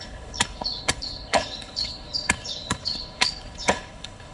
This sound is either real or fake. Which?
fake